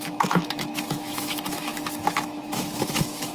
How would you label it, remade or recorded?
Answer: remade